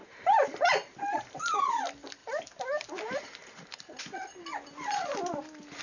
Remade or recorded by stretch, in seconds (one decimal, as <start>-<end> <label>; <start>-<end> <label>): 0.0-1.4 remade; 1.4-2.2 recorded; 2.2-4.0 remade; 4.0-5.8 recorded